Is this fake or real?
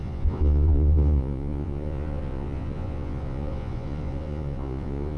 fake